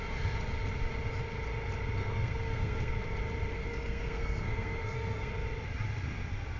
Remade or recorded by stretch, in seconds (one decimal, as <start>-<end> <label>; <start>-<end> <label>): 0.0-2.0 recorded; 2.0-2.9 remade; 2.9-3.5 recorded; 3.5-5.3 remade; 5.3-6.6 recorded